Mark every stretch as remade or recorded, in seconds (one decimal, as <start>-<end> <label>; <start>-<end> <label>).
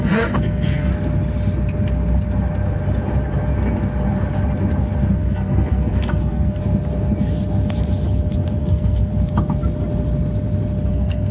0.0-0.9 remade; 0.9-5.2 recorded; 5.2-6.6 remade; 6.6-8.6 recorded; 8.6-9.1 remade; 9.1-10.9 recorded; 10.9-11.3 remade